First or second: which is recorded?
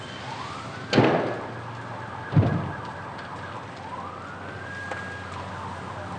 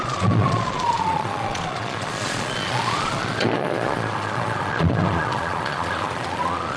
first